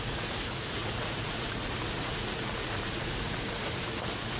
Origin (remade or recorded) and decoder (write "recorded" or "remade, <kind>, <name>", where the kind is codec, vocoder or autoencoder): remade, vocoder, Vocos